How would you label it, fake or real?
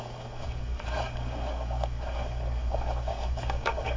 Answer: fake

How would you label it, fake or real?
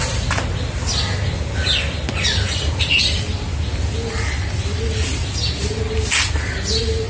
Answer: real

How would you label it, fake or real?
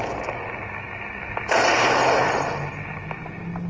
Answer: real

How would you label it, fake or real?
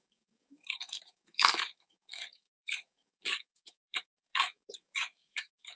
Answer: fake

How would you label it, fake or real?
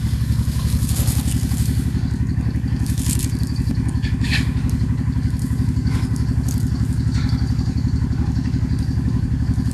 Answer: fake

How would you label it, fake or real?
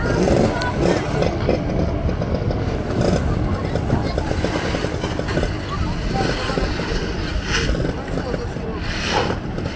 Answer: real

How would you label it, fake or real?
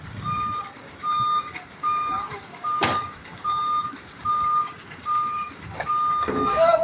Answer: fake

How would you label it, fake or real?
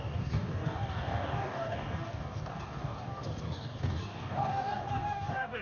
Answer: fake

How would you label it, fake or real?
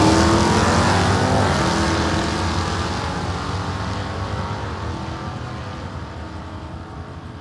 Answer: real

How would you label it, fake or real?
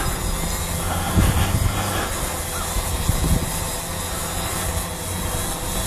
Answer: real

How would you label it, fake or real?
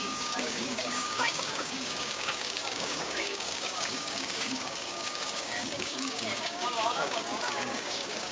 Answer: fake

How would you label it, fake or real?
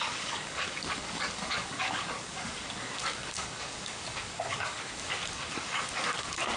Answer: fake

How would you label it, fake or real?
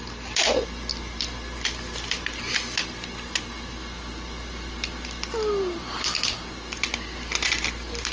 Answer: real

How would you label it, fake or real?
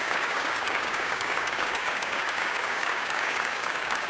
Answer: fake